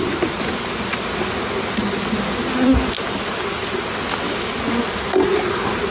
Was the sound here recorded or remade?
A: recorded